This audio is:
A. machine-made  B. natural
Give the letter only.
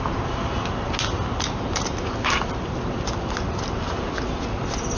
B